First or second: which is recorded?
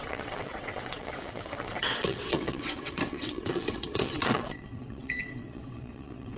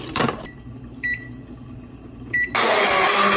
second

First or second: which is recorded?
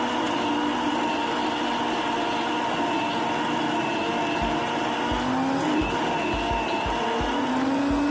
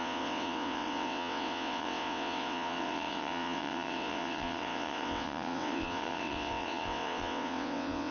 first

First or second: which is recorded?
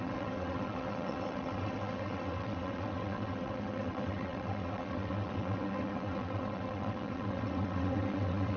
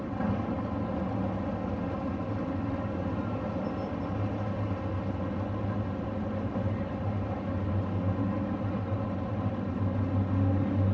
second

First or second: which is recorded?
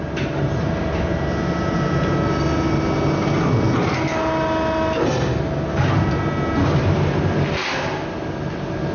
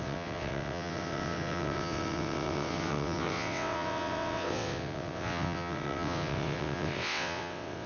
first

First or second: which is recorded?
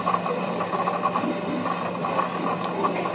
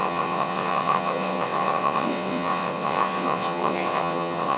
first